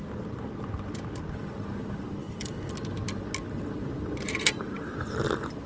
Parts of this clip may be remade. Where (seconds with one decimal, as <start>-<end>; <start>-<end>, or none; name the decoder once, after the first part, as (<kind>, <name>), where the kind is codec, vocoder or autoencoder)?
2.2-2.7 (codec, DAC)